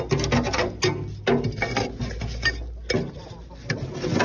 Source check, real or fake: real